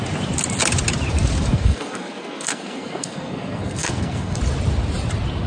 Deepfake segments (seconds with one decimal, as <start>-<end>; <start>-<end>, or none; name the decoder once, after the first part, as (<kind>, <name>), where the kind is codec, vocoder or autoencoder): 1.5-4.4 (codec, SNAC)